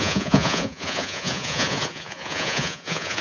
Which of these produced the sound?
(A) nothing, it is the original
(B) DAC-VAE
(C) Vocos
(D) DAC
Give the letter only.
C